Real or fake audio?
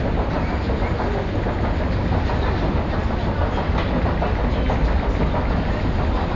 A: real